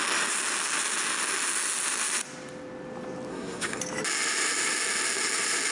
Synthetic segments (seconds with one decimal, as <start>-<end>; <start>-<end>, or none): 3.3-3.8